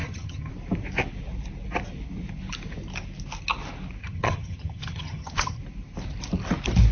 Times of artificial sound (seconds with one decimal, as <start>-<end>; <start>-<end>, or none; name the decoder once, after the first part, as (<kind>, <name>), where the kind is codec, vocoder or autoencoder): 0.0-0.5 (vocoder, HiFi-GAN); 4.0-5.6